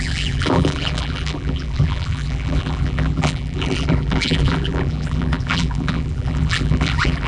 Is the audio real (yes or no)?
no